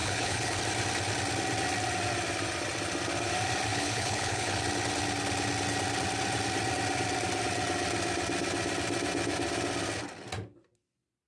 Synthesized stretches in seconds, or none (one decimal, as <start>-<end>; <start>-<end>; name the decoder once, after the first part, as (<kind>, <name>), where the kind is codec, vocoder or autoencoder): 0.0-0.6 (codec, HILCodec); 3.7-4.6